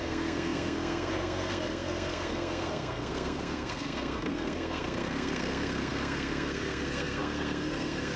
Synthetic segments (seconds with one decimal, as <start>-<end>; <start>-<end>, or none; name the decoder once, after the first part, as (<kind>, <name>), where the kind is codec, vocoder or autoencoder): 0.0-8.2 (codec, SNAC)